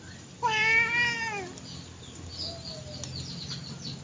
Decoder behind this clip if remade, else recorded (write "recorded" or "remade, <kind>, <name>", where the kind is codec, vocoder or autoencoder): recorded